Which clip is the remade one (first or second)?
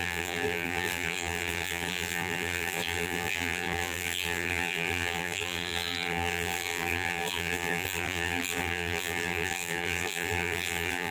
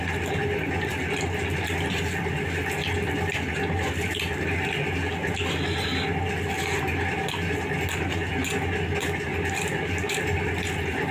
first